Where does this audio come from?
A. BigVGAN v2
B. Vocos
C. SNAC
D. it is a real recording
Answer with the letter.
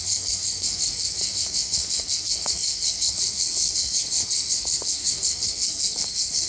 C